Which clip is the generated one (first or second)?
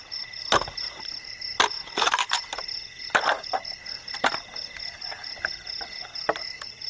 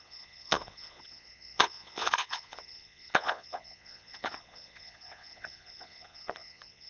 second